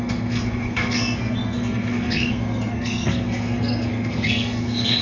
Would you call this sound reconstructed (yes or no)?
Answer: yes